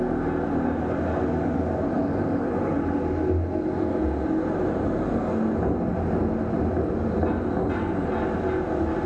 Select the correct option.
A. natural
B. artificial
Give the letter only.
A